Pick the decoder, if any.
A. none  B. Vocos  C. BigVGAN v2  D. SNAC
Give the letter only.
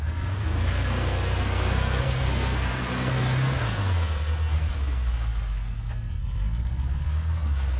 D